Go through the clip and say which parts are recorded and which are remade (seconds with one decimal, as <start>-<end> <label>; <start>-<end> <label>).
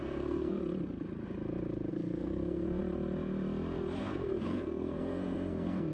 0.0-0.6 remade; 0.6-1.9 recorded; 1.9-2.8 remade; 2.8-4.0 recorded; 4.0-5.9 remade